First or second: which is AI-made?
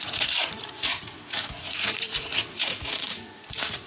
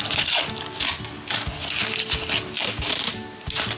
first